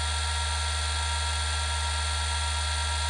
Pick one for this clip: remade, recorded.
recorded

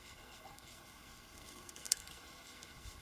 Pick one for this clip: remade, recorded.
remade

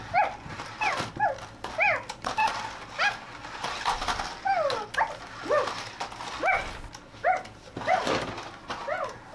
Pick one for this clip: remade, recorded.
recorded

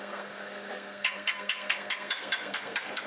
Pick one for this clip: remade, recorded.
remade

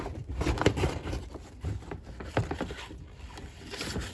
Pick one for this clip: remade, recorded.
recorded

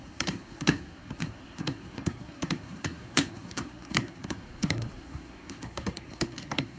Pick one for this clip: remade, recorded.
remade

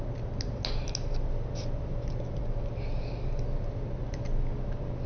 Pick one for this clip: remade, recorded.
recorded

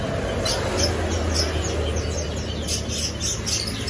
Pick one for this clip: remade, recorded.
recorded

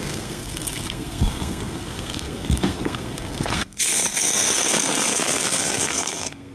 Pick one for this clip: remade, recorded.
remade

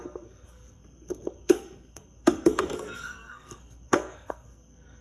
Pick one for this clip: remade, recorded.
remade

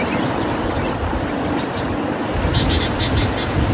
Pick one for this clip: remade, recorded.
recorded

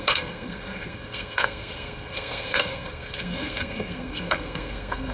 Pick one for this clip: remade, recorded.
remade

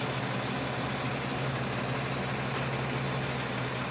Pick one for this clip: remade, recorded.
recorded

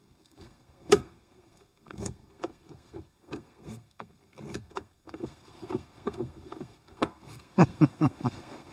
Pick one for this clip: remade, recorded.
remade